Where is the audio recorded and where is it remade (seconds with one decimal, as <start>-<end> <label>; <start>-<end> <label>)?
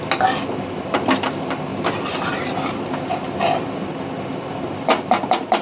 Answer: 0.0-1.7 recorded; 1.7-3.4 remade; 3.4-5.6 recorded